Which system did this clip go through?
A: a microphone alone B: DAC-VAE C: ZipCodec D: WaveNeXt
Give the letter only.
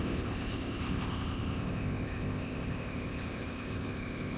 C